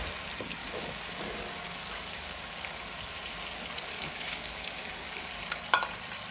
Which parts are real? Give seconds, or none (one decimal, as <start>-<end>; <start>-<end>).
0.0-0.6; 3.0-3.9; 5.3-6.3